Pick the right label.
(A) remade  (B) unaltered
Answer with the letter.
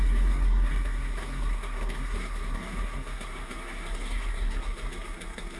A